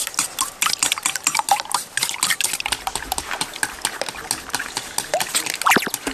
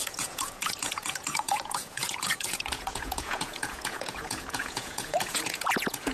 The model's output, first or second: second